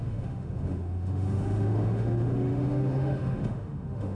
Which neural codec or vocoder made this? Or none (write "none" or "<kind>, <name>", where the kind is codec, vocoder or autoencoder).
autoencoder, DAC-VAE